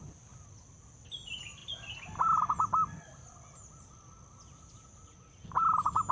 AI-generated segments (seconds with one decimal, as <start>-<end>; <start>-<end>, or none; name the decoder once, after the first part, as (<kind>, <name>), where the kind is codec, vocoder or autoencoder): none